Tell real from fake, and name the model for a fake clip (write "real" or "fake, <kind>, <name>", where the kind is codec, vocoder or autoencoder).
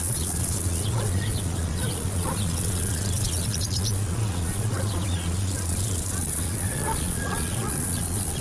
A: fake, vocoder, Vocos